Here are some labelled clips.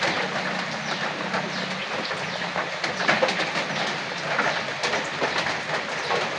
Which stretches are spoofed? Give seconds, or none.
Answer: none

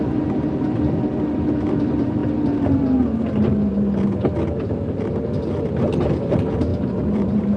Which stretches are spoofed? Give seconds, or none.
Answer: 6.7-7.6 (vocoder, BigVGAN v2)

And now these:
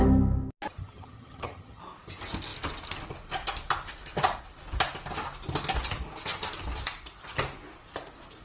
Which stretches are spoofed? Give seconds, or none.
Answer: 0.8-1.8 (vocoder, HiFi-GAN)

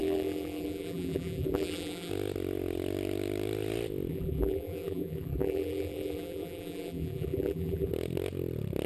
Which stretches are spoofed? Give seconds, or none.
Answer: 0.0-2.1 (vocoder, BigVGAN v2); 4.1-7.9

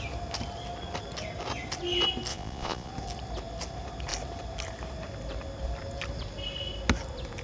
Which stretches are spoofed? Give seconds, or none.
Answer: 2.3-2.9 (vocoder, Vocos)

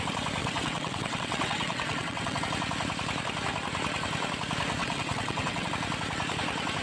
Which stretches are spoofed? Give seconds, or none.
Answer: 0.4-2.4 (vocoder, WaveNeXt); 4.8-5.7

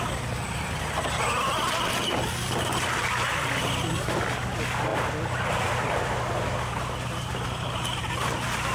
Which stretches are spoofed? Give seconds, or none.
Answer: none